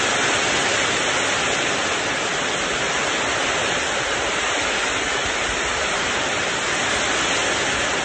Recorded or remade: recorded